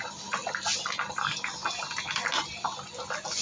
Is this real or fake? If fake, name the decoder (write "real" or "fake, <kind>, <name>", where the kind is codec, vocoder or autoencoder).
real